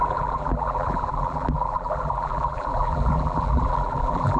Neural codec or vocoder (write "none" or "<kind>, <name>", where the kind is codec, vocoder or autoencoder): vocoder, BigVGAN v2